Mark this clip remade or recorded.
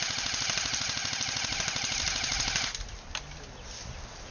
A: recorded